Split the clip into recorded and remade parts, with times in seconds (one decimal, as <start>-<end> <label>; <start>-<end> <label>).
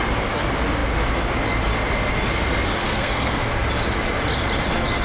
0.0-2.8 recorded; 2.8-3.5 remade; 3.5-5.0 recorded